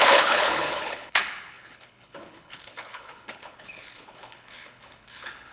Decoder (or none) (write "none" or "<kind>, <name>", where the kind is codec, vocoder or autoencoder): codec, HILCodec